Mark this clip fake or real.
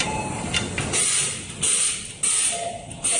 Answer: real